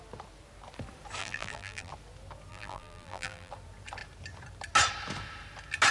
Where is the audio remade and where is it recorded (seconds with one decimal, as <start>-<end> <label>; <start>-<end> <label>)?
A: 0.0-1.2 recorded; 1.2-1.9 remade; 1.9-2.5 recorded; 2.5-3.5 remade; 3.5-5.9 recorded